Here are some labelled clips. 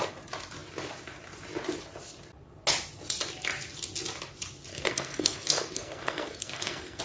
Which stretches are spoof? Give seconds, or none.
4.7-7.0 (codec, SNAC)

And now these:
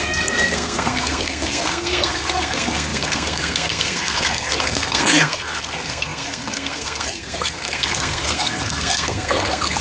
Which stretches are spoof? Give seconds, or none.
0.0-9.8 (codec, SNAC)

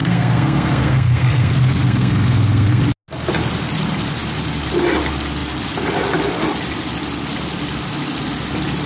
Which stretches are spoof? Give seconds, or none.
0.0-2.8 (codec, SNAC)

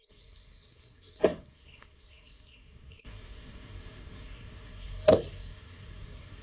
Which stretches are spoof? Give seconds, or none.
0.0-6.4 (codec, SNAC)

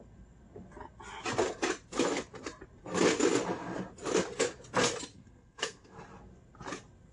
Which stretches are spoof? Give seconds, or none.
5.1-6.0 (codec, SNAC)

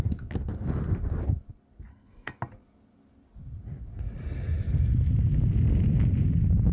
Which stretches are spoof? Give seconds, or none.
1.9-2.4 (codec, SNAC)

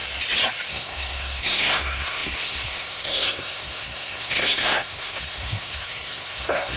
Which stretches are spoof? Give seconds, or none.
0.7-6.8 (codec, SNAC)

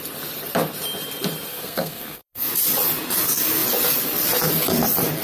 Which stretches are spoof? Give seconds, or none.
1.5-2.5 (codec, SNAC)